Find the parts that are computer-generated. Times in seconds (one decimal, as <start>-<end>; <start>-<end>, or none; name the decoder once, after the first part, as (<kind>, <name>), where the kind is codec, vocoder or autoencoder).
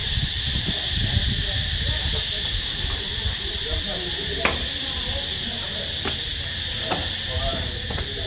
0.0-3.4 (vocoder, BigVGAN v2); 6.3-7.4